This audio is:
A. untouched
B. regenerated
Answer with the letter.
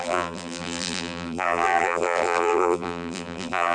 B